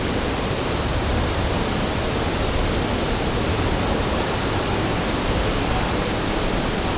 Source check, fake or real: real